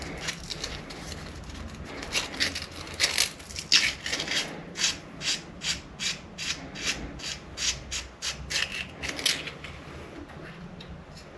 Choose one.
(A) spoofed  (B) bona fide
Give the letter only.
B